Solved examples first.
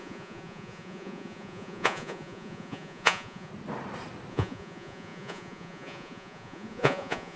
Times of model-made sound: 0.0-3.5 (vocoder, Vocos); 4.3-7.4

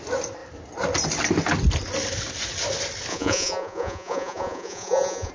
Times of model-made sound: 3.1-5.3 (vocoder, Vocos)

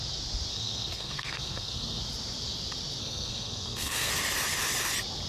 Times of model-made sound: 0.5-2.0 (codec, SNAC); 3.0-4.1